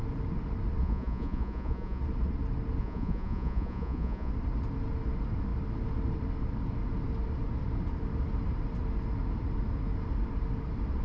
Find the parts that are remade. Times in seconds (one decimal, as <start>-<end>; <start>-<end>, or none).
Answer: 0.8-2.0; 2.8-4.3